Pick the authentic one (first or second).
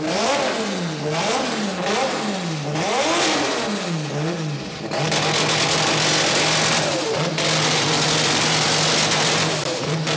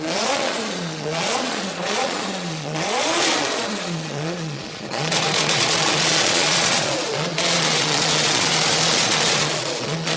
first